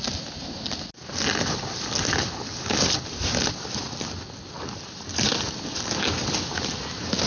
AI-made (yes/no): no